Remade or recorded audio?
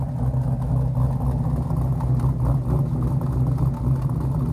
recorded